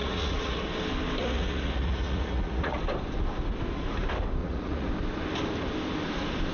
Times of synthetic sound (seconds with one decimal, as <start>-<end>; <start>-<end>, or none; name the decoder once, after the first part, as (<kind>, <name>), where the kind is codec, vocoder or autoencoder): 0.0-0.6 (vocoder, Vocos); 1.2-2.8; 4.4-4.9